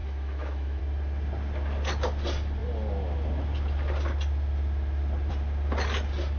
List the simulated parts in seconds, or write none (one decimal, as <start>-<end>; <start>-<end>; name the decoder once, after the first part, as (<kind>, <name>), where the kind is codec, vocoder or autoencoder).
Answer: 0.0-0.8 (autoencoder, DAC-VAE)